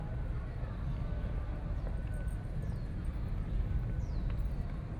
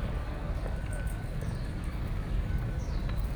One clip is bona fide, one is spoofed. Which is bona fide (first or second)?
first